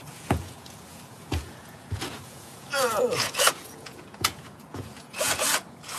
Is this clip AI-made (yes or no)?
yes